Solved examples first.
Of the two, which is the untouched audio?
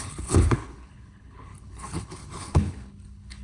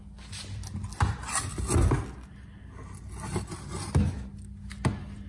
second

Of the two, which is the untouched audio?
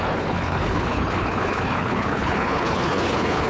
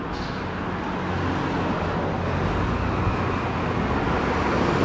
second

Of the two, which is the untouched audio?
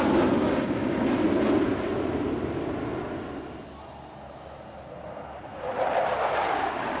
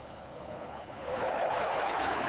first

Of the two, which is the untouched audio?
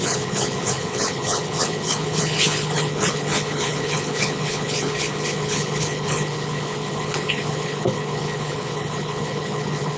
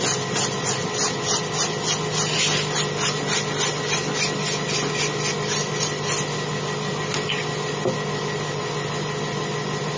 second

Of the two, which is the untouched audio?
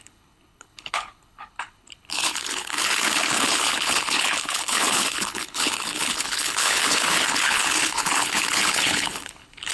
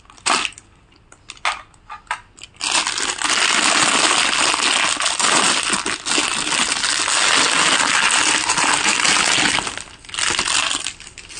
second